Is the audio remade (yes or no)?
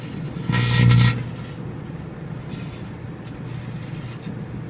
no